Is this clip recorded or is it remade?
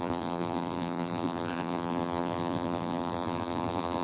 remade